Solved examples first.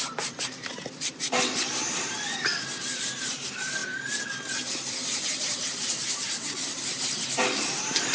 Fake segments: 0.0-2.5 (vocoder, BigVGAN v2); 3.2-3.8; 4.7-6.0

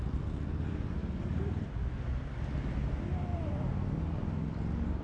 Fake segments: 0.0-1.0 (vocoder, BigVGAN v2); 1.7-5.0

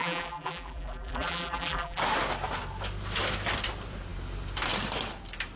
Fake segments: 0.0-2.0 (vocoder, BigVGAN v2)

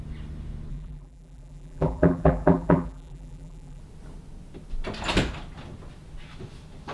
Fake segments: 0.7-3.8 (vocoder, BigVGAN v2)

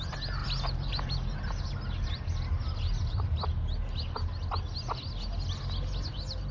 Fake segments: 0.4-1.5 (vocoder, BigVGAN v2)

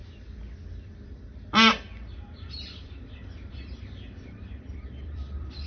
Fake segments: 0.7-5.7 (vocoder, BigVGAN v2)

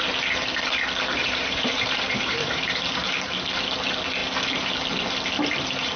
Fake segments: 1.2-3.3 (vocoder, BigVGAN v2)

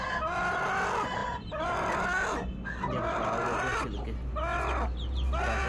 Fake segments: 1.2-2.0 (vocoder, BigVGAN v2)